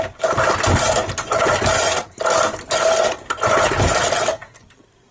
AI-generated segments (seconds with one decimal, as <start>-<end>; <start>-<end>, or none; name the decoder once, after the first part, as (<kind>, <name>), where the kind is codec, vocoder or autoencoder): none